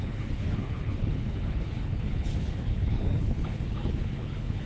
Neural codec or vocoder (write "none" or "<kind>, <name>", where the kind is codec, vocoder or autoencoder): codec, HILCodec